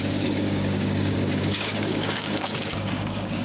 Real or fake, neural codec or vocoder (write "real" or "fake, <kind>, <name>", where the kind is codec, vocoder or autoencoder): fake, codec, DAC